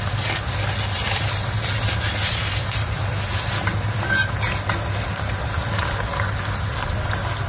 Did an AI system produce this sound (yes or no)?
no